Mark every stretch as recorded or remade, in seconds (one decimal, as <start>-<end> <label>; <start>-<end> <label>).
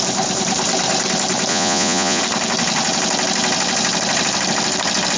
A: 0.0-1.5 recorded; 1.5-2.2 remade; 2.2-5.2 recorded